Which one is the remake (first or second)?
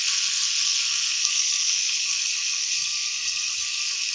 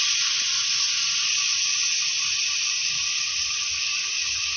first